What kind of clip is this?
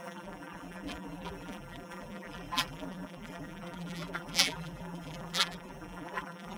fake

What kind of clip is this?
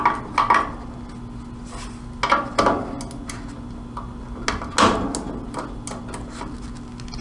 real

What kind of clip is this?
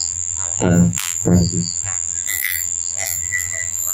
fake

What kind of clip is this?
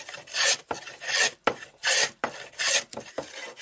fake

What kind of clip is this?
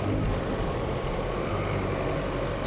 real